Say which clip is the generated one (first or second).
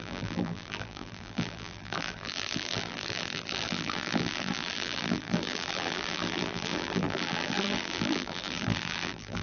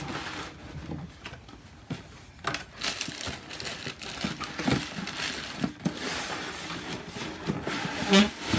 first